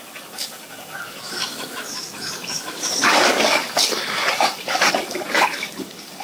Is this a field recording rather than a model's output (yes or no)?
no